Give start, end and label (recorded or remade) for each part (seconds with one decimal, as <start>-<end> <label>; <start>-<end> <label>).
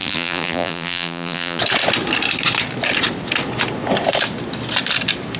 0.0-1.6 remade; 1.6-5.4 recorded